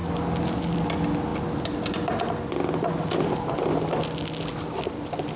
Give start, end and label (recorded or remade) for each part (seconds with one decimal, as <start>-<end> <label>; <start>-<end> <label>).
0.0-5.4 recorded